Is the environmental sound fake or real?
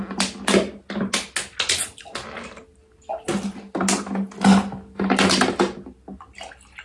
real